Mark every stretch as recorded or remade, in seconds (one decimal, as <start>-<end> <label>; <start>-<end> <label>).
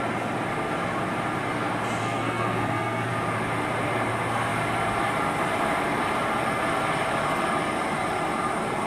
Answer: 0.0-2.0 recorded; 2.0-3.1 remade; 3.1-8.9 recorded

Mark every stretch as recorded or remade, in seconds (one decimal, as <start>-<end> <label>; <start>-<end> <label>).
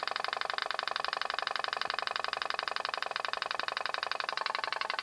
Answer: 0.0-5.0 recorded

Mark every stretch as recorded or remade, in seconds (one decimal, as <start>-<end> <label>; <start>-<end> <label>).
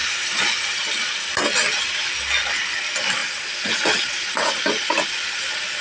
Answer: 0.0-5.8 recorded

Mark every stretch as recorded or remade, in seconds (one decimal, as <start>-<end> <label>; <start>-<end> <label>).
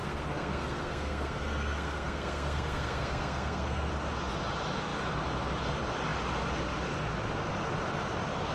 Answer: 0.0-3.9 remade; 3.9-8.5 recorded